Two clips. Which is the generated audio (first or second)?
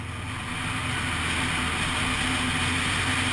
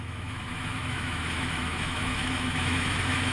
second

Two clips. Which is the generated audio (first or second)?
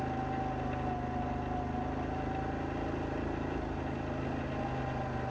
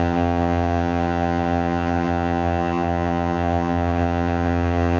second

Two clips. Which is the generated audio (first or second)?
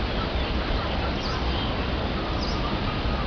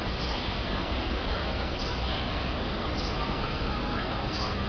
second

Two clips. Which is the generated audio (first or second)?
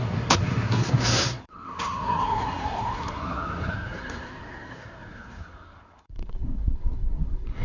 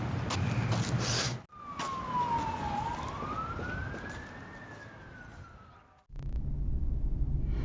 first